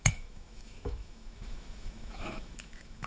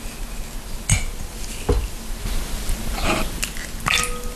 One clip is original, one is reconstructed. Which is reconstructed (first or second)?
first